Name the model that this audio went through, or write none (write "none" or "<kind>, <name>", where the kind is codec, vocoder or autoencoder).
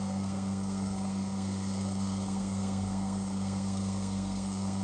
codec, SNAC